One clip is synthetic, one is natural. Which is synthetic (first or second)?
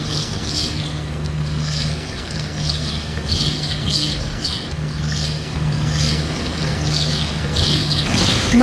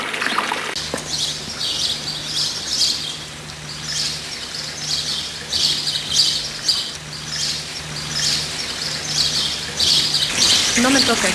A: first